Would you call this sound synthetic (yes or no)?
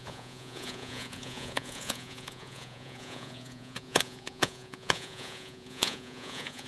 yes